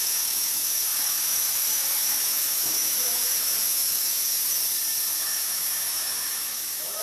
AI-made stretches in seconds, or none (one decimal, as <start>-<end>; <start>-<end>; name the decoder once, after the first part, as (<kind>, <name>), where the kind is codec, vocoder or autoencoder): 0.0-4.6 (autoencoder, DAC-VAE); 5.1-7.0